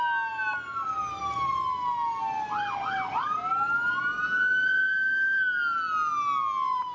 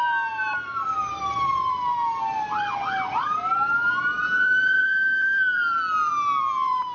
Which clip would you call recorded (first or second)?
first